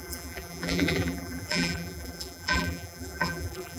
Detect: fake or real fake